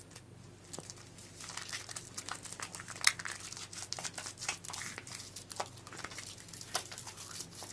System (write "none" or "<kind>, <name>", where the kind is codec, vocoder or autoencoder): none